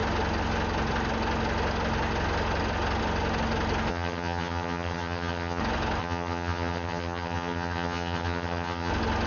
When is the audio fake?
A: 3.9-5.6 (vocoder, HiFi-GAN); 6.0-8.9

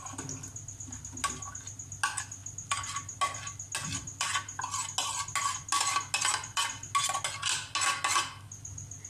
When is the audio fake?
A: none

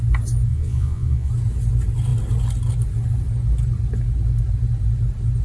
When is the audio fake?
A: 0.5-1.3 (vocoder, Vocos)

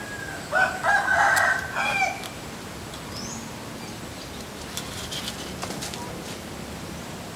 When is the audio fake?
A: none

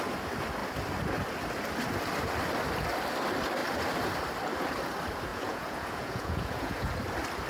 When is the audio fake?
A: 5.3-6.9 (vocoder, Vocos)